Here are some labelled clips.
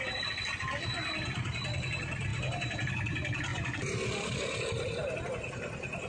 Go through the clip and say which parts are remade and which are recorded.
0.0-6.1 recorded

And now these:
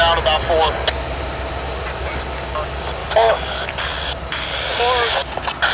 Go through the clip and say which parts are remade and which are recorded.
0.0-3.0 recorded; 3.0-3.7 remade; 3.7-5.7 recorded

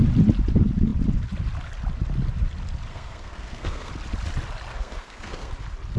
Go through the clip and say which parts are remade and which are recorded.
0.0-2.9 recorded; 2.9-3.9 remade; 3.9-4.7 recorded; 4.7-5.5 remade; 5.5-6.0 recorded

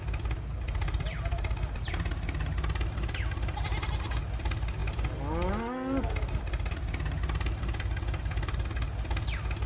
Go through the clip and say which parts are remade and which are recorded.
0.0-9.7 recorded

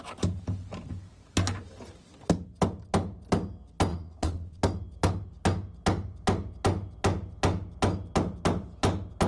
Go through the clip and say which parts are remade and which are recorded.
0.0-3.9 recorded; 3.9-4.6 remade; 4.6-9.3 recorded

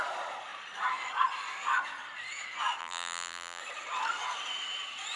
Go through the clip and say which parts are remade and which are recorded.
0.0-2.8 recorded; 2.8-3.6 remade; 3.6-5.2 recorded

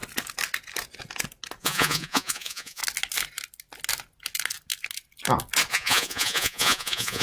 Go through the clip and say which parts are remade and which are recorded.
0.0-1.6 recorded; 1.6-2.8 remade; 2.8-5.7 recorded; 5.7-7.2 remade